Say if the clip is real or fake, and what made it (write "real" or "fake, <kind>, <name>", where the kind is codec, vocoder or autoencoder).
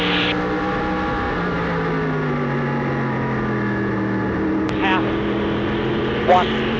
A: real